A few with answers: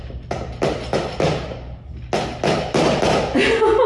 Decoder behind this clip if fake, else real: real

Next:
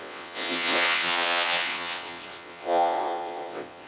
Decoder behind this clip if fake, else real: fake, vocoder, WaveNeXt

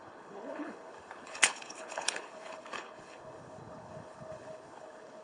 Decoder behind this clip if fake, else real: fake, codec, HILCodec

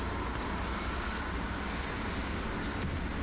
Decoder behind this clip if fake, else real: real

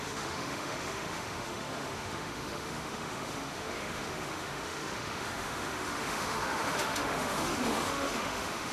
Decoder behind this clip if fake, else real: fake, autoencoder, DAC-VAE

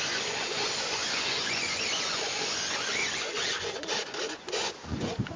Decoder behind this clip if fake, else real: fake, vocoder, Vocos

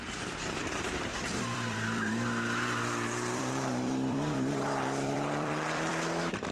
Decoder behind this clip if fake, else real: fake, vocoder, BigVGAN v2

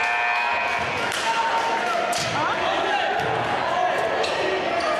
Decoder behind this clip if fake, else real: real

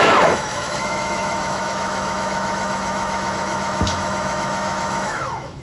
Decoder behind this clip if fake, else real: fake, autoencoder, DAC-VAE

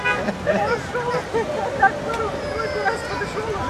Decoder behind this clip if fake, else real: real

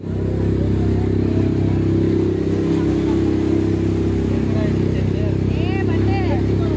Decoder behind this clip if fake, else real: real